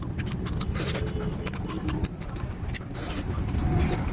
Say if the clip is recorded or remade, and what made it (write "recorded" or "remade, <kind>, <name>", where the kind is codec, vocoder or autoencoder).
recorded